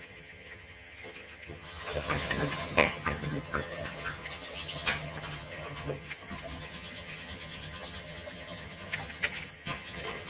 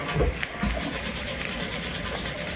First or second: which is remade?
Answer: first